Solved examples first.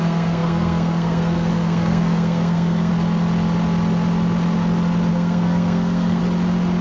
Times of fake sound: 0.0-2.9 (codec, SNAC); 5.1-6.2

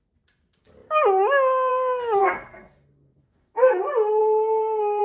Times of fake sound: 2.2-3.8 (codec, SNAC); 4.2-5.0

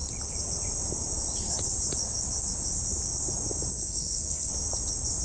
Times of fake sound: 3.7-4.5 (codec, SNAC)

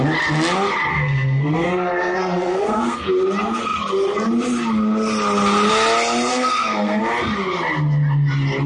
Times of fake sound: 0.9-3.1 (codec, SNAC); 6.3-7.0

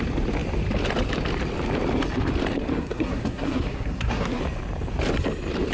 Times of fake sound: 2.7-4.4 (codec, SNAC)

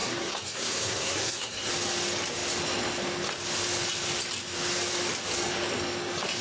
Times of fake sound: 0.0-1.7 (codec, SNAC)

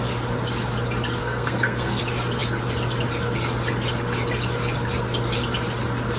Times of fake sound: 1.2-2.0 (codec, SNAC)

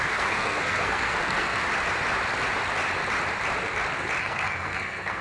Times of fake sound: 0.0-1.6 (codec, SNAC); 4.2-5.2